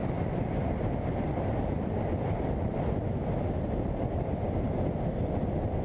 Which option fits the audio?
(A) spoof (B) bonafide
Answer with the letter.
B